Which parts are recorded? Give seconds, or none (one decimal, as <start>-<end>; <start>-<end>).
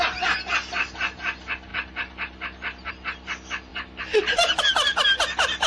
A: 0.0-5.7